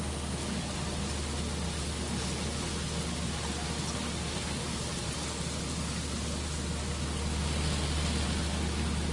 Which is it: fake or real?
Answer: real